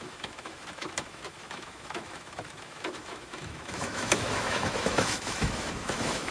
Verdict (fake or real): fake